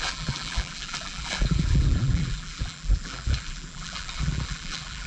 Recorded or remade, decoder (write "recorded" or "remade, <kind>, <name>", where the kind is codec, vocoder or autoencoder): remade, vocoder, BigVGAN v2